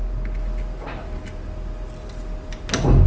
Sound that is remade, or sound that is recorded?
recorded